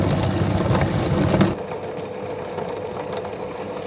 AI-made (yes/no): no